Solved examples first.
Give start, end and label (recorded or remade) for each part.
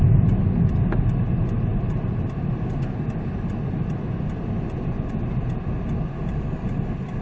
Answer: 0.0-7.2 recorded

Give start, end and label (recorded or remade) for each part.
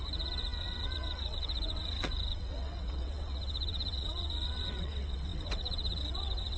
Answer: 0.0-6.6 remade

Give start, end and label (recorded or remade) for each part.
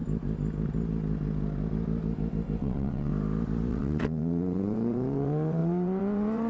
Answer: 0.0-2.6 recorded; 2.6-3.1 remade; 3.1-3.7 recorded; 3.7-6.5 remade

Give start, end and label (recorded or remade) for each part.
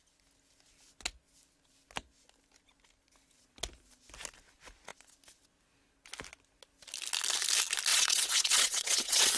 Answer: 0.0-7.9 recorded; 7.9-9.4 remade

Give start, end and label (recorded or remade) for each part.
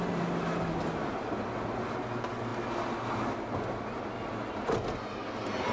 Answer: 0.0-5.7 recorded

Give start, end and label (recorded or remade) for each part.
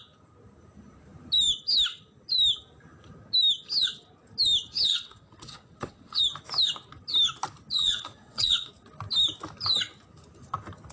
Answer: 0.0-4.9 recorded; 4.9-6.2 remade; 6.2-7.8 recorded; 7.8-8.7 remade; 8.7-10.9 recorded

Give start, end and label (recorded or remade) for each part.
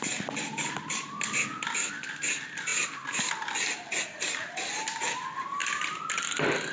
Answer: 0.0-6.7 recorded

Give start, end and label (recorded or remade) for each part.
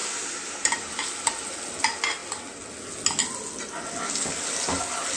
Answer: 0.0-5.2 recorded